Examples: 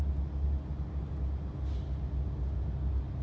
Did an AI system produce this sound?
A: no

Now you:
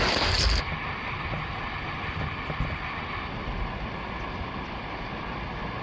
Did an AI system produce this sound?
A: no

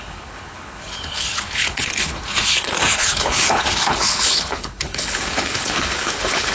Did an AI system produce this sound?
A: yes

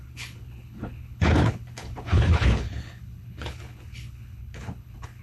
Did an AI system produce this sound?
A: yes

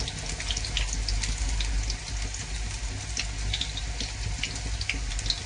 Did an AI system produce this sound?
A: no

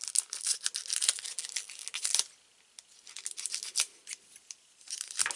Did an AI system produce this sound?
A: no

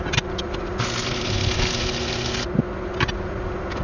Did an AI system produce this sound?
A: no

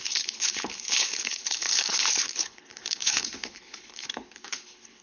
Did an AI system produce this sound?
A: yes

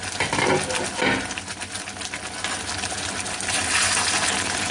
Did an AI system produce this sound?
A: no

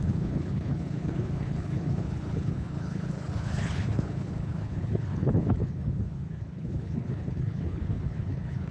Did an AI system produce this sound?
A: yes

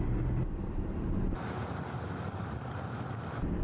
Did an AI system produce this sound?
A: no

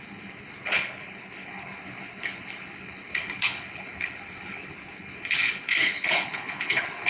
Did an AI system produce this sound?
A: yes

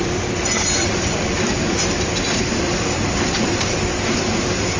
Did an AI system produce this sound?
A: no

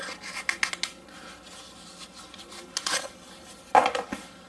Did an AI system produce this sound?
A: no